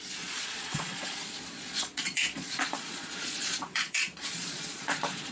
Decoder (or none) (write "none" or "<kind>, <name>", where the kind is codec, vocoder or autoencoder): vocoder, Vocos